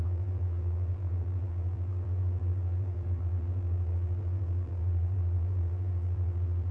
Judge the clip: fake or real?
fake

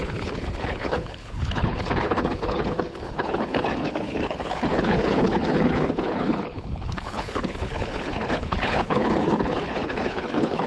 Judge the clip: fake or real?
fake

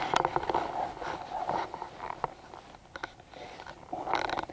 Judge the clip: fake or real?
real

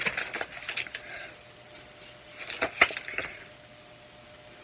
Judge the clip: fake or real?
real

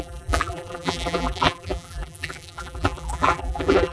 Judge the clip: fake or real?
fake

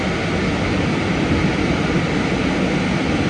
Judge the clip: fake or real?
real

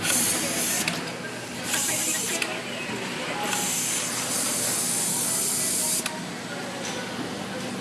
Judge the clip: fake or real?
real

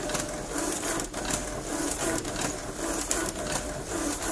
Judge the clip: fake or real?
real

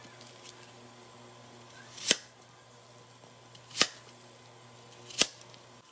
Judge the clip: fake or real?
real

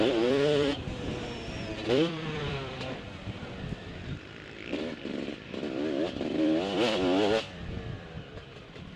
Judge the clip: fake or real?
fake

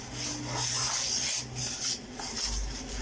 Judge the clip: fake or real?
real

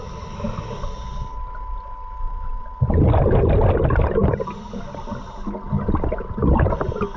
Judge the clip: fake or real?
real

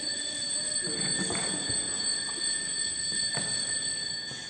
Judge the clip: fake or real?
real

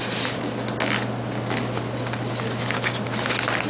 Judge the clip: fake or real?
real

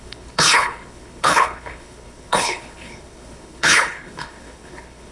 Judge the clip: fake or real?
fake